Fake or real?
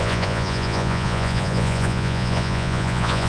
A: fake